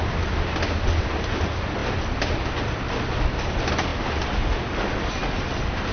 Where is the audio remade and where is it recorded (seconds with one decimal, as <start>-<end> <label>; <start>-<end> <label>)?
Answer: 0.0-5.9 recorded